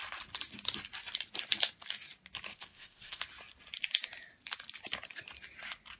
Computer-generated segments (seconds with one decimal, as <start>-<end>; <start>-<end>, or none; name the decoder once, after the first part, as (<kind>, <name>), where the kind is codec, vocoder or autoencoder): 2.5-3.2 (codec, ZipCodec)